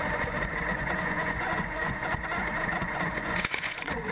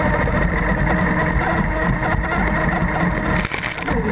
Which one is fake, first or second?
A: first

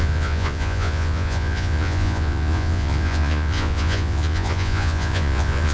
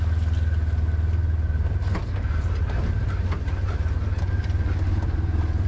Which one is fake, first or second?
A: first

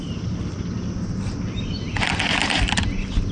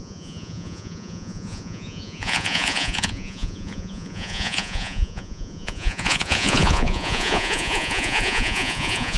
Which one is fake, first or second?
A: second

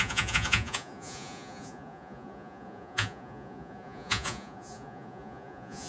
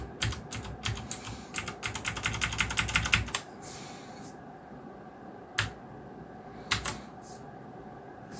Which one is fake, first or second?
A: first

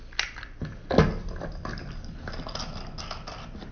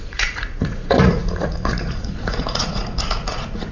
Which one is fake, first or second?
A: second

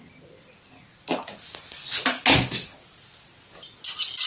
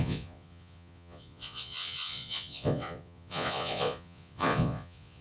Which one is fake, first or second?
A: second